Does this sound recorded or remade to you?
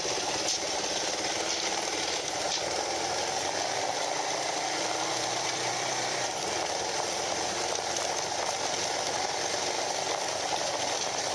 remade